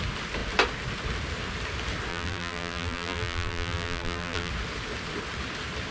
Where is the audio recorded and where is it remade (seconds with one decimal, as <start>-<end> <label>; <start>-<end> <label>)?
0.0-2.1 recorded; 2.1-4.5 remade; 4.5-5.9 recorded